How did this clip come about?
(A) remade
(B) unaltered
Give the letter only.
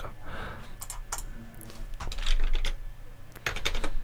B